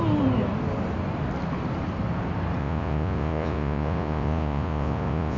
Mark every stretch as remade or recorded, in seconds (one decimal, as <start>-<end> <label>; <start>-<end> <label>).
0.0-2.6 recorded; 2.6-5.4 remade